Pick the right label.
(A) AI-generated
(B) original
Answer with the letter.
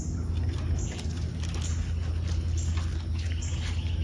B